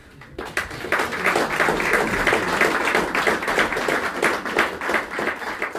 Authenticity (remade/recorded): recorded